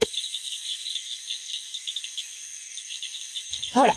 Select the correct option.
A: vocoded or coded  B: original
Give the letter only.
A